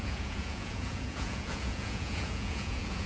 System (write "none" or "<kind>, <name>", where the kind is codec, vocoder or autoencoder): vocoder, Vocos